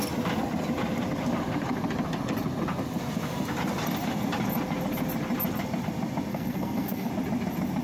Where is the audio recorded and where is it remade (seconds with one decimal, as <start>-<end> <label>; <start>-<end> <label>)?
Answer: 0.0-6.3 recorded; 6.3-7.1 remade; 7.1-7.8 recorded